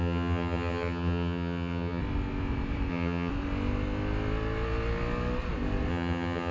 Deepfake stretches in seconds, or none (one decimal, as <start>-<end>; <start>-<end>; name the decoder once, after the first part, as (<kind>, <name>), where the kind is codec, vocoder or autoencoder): 0.0-2.0 (vocoder, HiFi-GAN); 2.9-3.3; 5.9-6.5